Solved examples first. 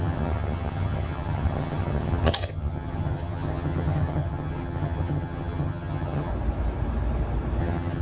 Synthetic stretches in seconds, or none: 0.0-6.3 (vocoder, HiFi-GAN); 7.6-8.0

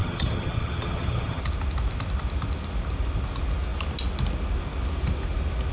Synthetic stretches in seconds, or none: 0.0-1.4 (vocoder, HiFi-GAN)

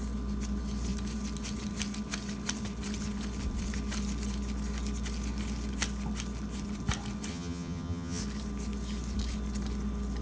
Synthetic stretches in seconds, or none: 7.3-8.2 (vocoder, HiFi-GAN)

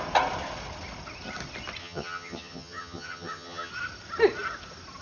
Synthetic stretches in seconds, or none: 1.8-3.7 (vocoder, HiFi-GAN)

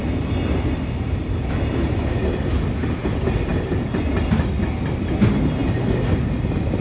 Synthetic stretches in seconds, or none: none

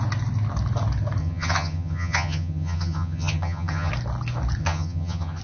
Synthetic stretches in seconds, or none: 1.2-3.9 (vocoder, HiFi-GAN); 4.6-5.4

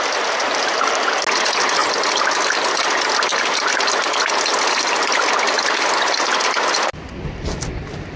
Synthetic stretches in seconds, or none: none